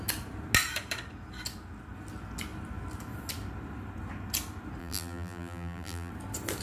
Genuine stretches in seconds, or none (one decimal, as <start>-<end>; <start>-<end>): 0.0-4.8; 6.1-6.6